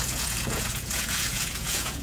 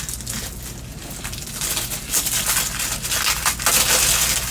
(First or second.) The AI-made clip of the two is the first